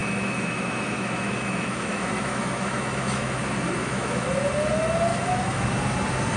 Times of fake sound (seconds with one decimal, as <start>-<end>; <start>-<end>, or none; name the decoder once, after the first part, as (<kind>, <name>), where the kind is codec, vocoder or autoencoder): 0.0-3.4 (autoencoder, DAC-VAE); 3.8-4.3; 5.1-5.6